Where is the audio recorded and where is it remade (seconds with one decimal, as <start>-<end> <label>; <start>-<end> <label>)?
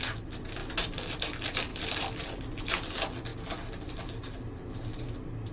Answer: 0.0-1.7 recorded; 1.7-2.7 remade; 2.7-5.5 recorded